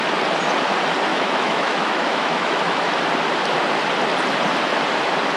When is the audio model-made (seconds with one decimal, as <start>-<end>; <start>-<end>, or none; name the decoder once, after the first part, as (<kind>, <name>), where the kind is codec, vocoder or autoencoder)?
1.1-2.9 (autoencoder, DAC-VAE)